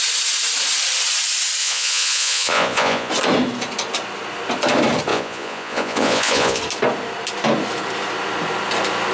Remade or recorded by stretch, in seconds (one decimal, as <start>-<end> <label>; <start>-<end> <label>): 0.0-1.6 recorded; 1.6-3.1 remade; 3.1-5.1 recorded; 5.1-6.6 remade; 6.6-9.1 recorded